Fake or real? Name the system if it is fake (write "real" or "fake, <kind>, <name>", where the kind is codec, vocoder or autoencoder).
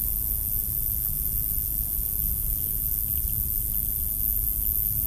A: real